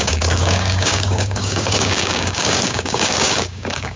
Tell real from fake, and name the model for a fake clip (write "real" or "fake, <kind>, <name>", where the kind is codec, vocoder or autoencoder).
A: fake, codec, DAC